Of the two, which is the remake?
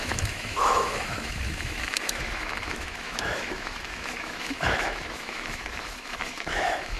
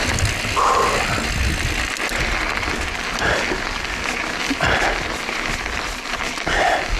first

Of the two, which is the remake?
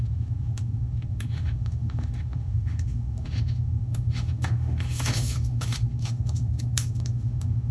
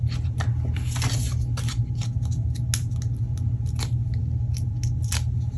first